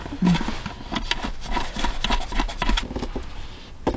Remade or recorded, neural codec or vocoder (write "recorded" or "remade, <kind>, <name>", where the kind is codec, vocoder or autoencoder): recorded